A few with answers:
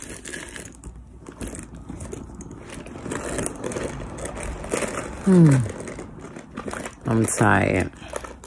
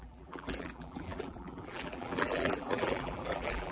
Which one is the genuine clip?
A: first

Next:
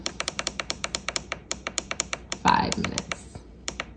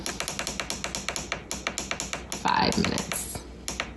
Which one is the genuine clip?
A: second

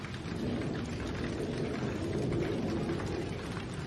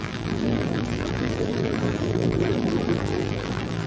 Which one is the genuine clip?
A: first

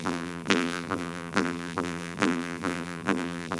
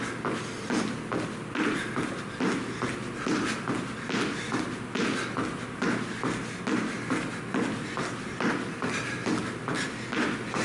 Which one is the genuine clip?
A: second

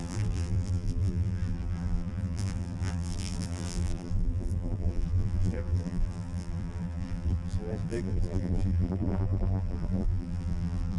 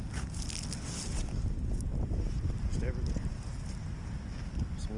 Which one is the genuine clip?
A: second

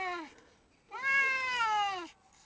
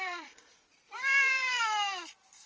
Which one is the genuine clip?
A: first